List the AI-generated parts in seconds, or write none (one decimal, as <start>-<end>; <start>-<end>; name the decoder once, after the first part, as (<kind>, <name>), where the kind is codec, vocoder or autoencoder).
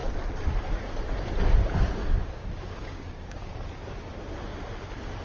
2.0-3.5 (codec, DAC)